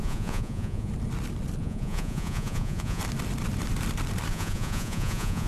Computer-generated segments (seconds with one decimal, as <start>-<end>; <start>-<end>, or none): 0.0-0.9; 1.6-3.0; 4.3-5.5